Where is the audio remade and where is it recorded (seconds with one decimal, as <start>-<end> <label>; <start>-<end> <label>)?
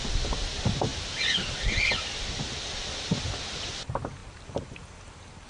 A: 0.0-5.5 recorded